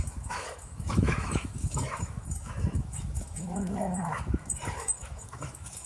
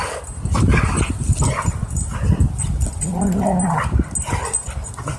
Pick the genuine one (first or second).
second